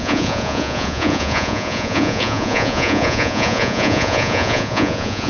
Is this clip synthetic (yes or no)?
yes